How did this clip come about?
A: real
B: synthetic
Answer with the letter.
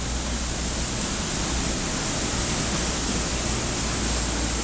A